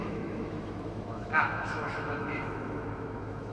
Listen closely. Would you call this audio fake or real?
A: fake